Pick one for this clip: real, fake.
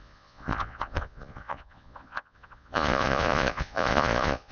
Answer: fake